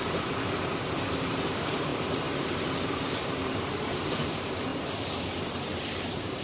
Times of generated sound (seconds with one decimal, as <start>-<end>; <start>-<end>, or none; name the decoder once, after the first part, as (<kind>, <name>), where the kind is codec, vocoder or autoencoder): 0.0-4.7 (vocoder, BigVGAN v2); 5.4-6.4